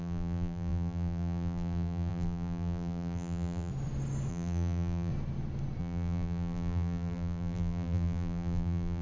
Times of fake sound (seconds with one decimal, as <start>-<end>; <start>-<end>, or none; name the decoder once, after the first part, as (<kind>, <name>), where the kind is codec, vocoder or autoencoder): 0.0-3.7 (vocoder, BigVGAN v2); 4.3-5.1; 5.8-9.0